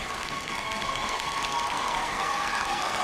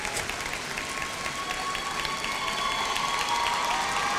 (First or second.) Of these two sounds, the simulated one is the first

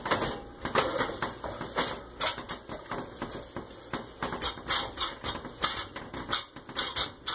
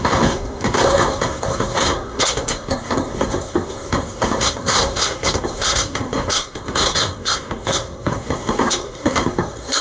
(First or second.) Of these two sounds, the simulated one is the second